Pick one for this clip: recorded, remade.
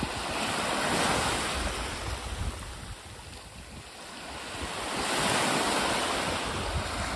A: recorded